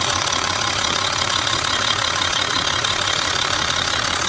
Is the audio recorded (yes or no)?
no